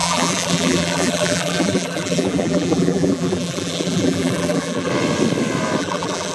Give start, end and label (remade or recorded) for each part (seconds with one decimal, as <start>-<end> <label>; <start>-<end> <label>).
0.0-4.9 remade; 4.9-5.8 recorded; 5.8-6.3 remade